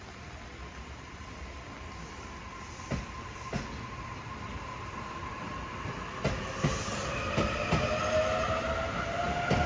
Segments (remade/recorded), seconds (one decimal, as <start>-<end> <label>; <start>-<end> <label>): 0.0-9.7 recorded

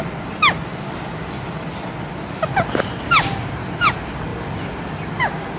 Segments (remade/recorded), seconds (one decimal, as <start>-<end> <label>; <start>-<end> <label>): 0.0-5.6 recorded